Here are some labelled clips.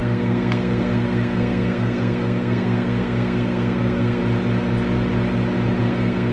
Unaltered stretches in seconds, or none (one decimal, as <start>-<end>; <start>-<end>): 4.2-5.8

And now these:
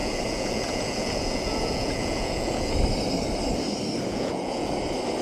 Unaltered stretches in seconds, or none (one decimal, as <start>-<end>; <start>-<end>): 2.7-4.1; 4.7-5.2

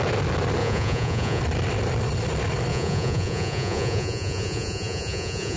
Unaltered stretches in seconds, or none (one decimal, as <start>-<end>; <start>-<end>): 0.0-0.6; 1.4-2.7